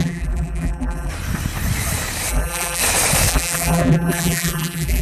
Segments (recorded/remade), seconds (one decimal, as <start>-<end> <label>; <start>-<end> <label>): 0.0-1.1 remade; 1.1-2.3 recorded; 2.3-2.8 remade; 2.8-3.3 recorded; 3.3-5.0 remade